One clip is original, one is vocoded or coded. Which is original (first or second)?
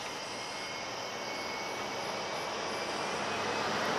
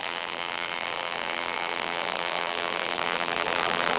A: first